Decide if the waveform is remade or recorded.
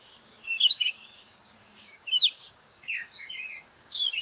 remade